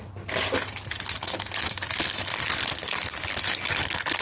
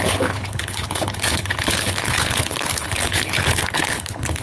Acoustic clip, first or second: first